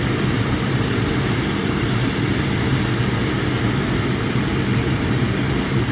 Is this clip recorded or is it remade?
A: recorded